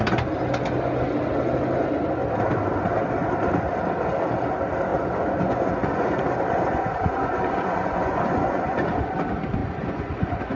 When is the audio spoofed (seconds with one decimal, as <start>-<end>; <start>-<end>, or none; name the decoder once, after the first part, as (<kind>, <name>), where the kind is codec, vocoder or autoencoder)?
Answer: 4.9-6.2 (vocoder, Vocos); 6.7-9.1; 9.6-10.6